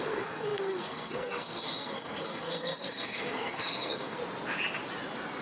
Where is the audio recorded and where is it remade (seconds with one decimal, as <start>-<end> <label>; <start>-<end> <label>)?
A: 0.0-4.2 remade; 4.2-5.4 recorded